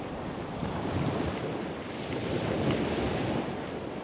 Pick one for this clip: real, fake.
real